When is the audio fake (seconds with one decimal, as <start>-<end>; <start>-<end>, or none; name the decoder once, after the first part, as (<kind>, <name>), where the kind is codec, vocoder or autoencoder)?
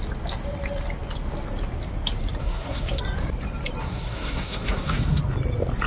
2.4-3.0 (codec, SNAC); 3.8-5.2